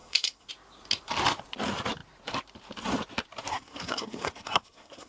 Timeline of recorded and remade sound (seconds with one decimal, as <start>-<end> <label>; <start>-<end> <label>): 0.0-0.5 remade; 0.5-3.5 recorded; 3.5-5.1 remade